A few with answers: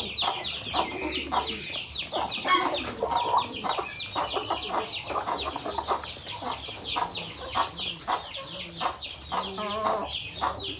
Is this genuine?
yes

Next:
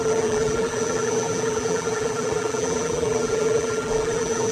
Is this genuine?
no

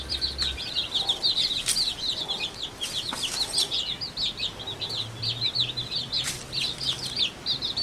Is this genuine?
no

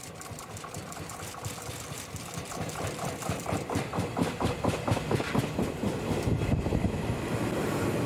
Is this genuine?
no